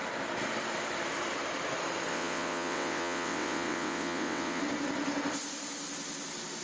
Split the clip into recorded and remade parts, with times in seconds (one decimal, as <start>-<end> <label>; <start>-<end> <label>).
0.0-2.1 recorded; 2.1-4.6 remade; 4.6-6.6 recorded